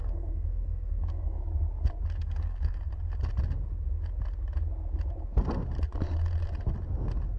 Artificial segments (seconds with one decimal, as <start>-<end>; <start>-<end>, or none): 0.0-1.4; 2.2-2.9